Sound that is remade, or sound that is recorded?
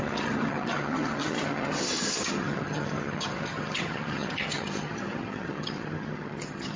remade